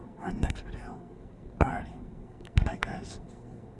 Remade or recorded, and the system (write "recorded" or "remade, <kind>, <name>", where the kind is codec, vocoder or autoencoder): remade, codec, SNAC